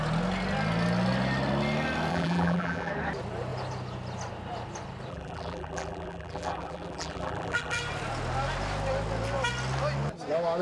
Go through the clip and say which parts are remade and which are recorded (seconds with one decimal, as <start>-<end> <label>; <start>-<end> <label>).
0.0-2.1 recorded; 2.1-2.9 remade; 2.9-5.1 recorded; 5.1-7.8 remade; 7.8-10.6 recorded